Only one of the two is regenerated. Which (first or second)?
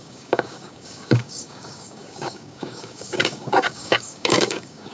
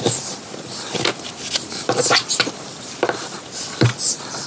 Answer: first